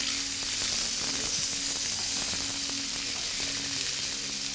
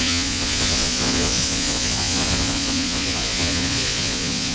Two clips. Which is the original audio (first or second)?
first